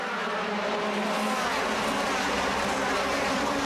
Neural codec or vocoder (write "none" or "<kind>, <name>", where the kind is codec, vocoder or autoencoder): none